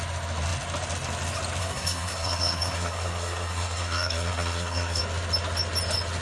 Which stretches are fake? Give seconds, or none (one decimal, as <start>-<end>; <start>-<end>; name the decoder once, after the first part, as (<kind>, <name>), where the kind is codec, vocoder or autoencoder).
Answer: 1.6-5.0 (codec, SNAC)